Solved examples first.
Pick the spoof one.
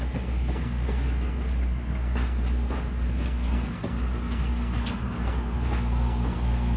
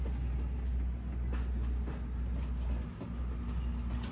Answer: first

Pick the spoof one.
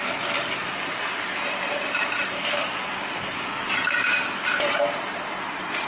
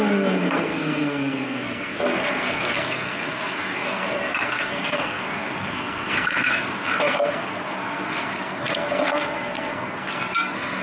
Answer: second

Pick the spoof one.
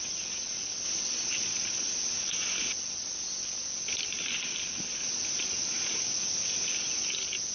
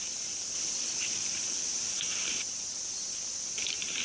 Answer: second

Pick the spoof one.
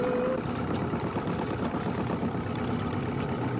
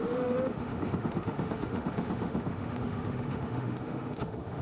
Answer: second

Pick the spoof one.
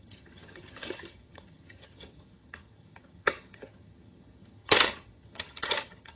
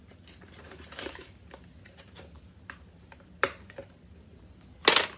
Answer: first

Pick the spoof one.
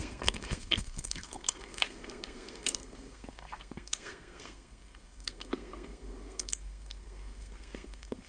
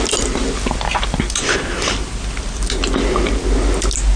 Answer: first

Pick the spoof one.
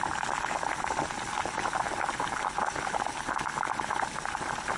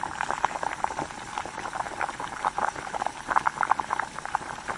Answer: second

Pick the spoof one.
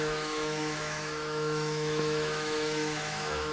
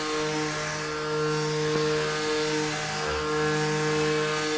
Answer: first